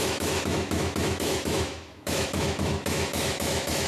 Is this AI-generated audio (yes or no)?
yes